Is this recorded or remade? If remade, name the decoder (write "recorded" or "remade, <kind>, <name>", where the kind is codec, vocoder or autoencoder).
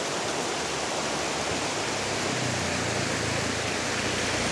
recorded